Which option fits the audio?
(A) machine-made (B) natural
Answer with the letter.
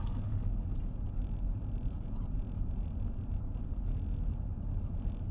B